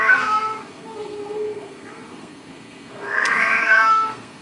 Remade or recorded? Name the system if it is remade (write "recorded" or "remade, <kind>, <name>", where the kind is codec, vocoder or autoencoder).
remade, codec, SNAC